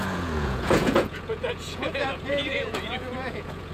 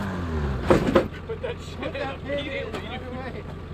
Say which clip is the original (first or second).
second